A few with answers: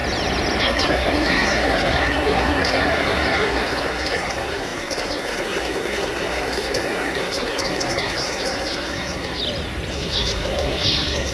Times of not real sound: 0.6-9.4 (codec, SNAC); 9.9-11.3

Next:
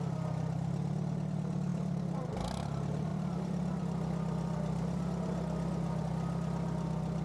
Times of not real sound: 1.7-2.7 (vocoder, BigVGAN v2)

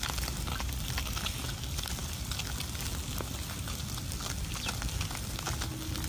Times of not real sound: none

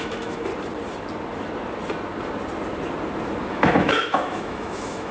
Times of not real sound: 0.0-0.5 (autoencoder, DAC-VAE); 3.5-5.1

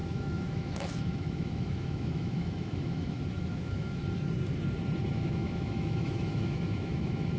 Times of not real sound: 0.0-4.0 (autoencoder, DAC-VAE); 5.1-7.4

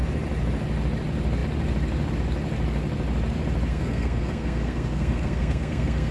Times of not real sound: 3.7-6.1 (codec, SNAC)

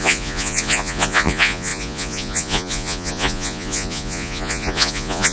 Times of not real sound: 0.0-5.3 (vocoder, Vocos)

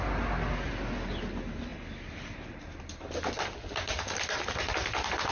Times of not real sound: none